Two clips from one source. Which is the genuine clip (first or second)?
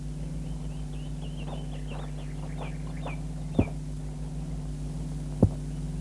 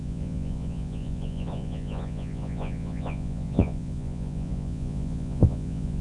first